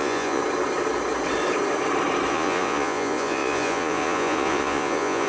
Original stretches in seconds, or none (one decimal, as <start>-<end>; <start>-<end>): 0.4-2.3